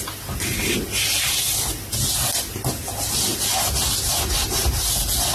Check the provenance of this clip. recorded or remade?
recorded